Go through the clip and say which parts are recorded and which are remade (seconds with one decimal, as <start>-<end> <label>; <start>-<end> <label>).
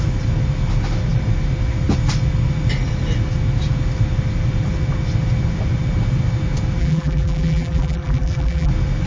0.0-6.8 recorded; 6.8-8.7 remade; 8.7-9.1 recorded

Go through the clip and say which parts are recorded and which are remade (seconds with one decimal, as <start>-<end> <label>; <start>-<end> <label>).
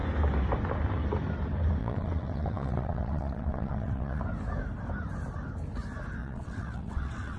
0.0-1.8 recorded; 1.8-4.2 remade; 4.2-6.2 recorded; 6.2-7.4 remade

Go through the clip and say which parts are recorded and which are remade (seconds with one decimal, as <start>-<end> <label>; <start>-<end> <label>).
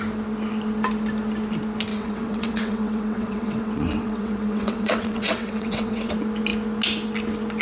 0.0-1.9 recorded; 1.9-6.1 remade; 6.1-7.6 recorded